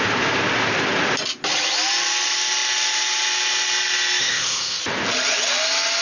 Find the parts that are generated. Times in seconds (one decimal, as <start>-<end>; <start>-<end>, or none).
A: 4.2-4.8